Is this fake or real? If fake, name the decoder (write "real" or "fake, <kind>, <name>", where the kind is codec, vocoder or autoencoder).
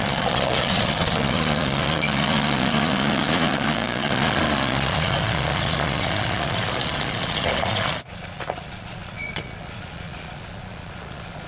fake, vocoder, Vocos